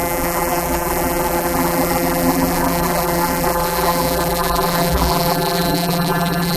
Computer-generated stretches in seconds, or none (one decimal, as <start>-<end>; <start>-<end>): 0.0-6.6